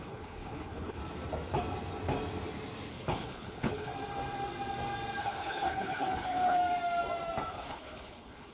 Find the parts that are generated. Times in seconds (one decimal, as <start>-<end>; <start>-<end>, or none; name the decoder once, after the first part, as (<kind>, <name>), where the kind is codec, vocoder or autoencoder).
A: 0.0-1.0 (codec, HILCodec); 2.9-3.9; 5.2-6.6; 7.5-8.5